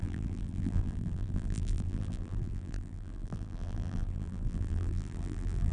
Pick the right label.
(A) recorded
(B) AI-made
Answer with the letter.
B